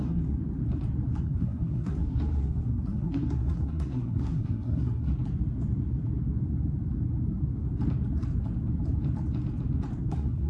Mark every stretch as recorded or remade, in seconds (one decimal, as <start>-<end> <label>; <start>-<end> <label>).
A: 0.0-0.4 remade; 0.4-1.2 recorded; 1.2-5.1 remade; 5.1-10.1 recorded; 10.1-10.5 remade